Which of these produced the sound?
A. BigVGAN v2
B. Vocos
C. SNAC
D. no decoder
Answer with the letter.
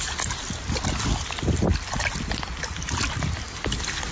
D